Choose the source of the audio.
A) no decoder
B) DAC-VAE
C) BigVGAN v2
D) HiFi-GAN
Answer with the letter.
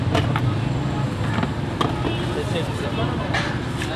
A